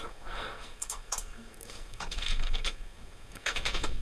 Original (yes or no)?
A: no